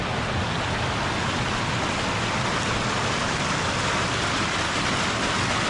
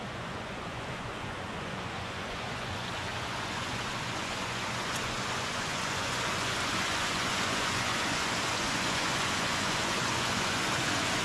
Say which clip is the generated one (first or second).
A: second